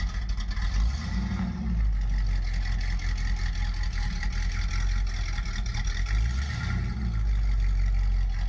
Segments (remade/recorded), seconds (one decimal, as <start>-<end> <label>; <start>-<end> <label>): 0.0-5.7 recorded; 5.7-6.6 remade; 6.6-8.5 recorded